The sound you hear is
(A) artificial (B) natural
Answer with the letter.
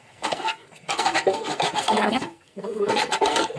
A